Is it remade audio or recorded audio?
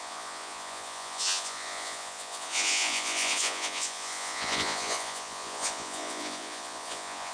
remade